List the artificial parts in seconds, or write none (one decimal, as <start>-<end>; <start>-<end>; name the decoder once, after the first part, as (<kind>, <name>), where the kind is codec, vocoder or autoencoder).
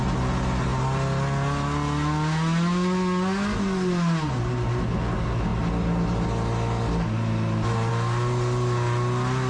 none